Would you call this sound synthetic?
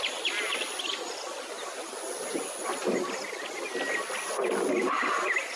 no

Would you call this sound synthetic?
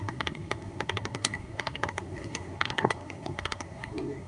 yes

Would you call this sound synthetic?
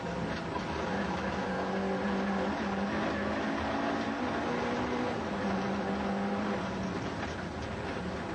no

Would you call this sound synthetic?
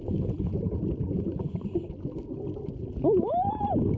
no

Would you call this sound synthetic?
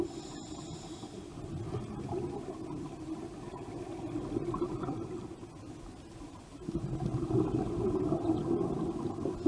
no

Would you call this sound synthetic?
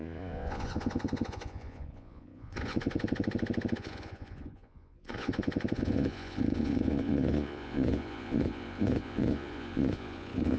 yes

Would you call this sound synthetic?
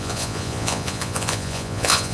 yes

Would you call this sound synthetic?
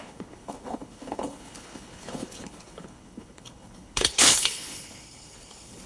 yes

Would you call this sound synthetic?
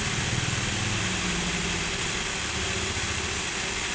no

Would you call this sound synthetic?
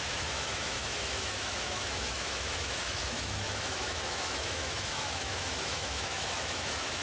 yes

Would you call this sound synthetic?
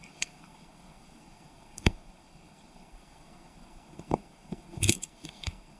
yes